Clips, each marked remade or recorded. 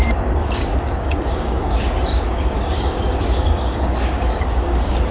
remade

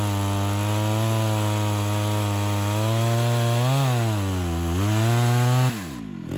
recorded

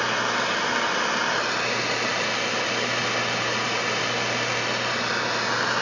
recorded